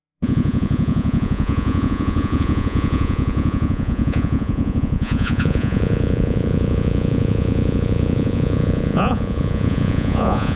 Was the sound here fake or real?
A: fake